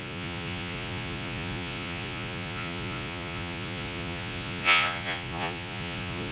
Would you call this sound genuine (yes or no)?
no